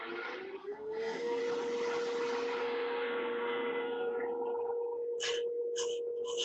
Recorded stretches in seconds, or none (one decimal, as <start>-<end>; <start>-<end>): 0.0-0.6; 1.4-2.6; 4.2-6.4